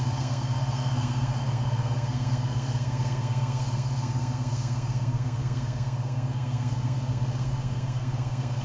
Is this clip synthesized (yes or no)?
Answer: yes